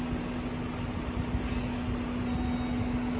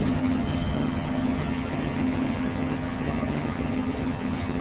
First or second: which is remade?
second